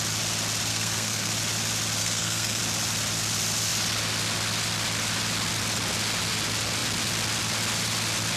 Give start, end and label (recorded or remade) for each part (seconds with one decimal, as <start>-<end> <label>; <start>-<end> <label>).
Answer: 0.0-0.7 recorded; 0.7-1.3 remade; 1.3-2.0 recorded; 2.0-2.6 remade; 2.6-8.4 recorded